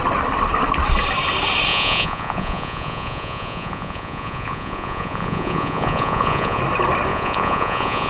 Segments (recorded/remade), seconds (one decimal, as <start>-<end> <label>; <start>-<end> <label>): 0.0-1.7 recorded; 1.7-6.6 remade; 6.6-7.1 recorded; 7.1-8.1 remade